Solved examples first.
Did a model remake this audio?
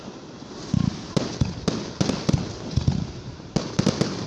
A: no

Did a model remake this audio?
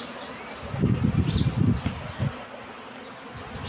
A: no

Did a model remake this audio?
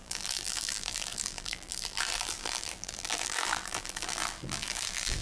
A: yes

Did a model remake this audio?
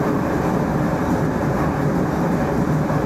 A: no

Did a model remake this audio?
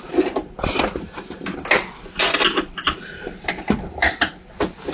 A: no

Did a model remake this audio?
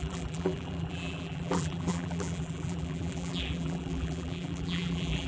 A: yes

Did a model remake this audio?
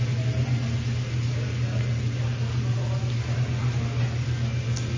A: no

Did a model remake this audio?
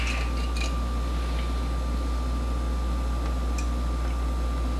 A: no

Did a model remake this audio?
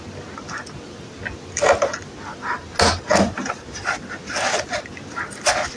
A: no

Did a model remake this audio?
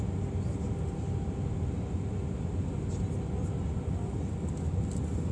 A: no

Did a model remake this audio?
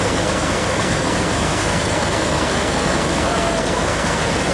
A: yes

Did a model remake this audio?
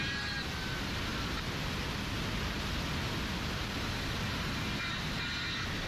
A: no